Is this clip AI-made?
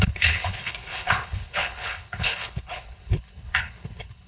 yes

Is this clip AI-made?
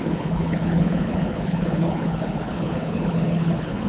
yes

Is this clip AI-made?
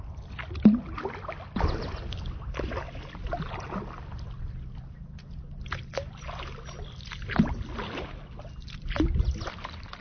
no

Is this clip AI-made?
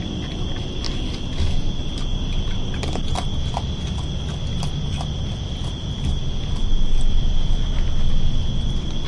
no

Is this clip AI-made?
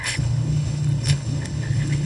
yes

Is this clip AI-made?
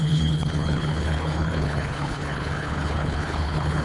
yes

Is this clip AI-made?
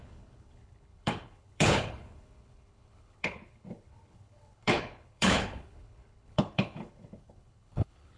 yes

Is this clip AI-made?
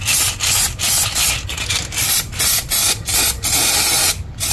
no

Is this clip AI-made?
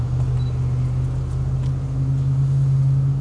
no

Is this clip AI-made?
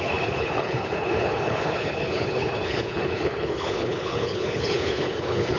yes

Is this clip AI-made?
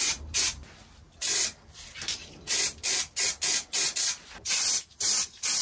no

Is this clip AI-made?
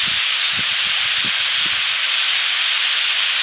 no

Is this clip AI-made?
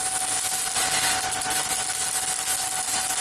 no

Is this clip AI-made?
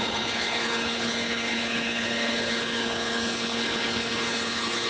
yes